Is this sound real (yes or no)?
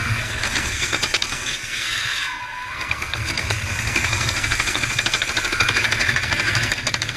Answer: no